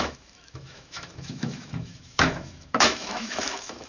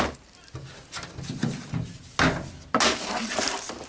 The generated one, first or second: first